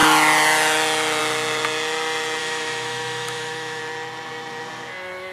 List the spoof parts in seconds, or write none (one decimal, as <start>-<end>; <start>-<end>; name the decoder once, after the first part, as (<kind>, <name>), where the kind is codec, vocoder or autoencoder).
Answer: 2.4-3.8 (autoencoder, DAC-VAE)